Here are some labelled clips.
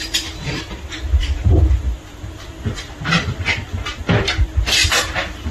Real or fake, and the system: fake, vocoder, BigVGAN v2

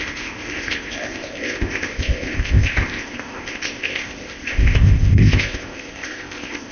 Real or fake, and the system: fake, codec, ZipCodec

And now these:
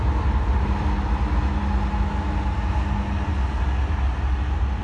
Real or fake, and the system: real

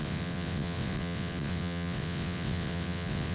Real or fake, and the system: fake, vocoder, WaveNeXt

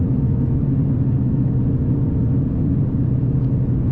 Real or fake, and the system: real